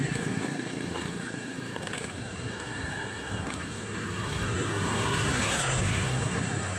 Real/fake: fake